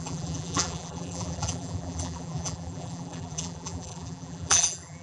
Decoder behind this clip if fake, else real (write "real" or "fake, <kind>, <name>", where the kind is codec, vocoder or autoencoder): fake, vocoder, BigVGAN v2